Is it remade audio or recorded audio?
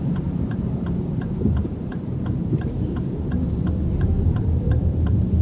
remade